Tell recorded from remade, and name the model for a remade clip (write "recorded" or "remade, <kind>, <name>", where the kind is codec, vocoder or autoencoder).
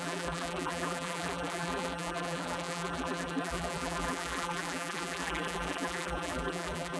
remade, vocoder, BigVGAN v2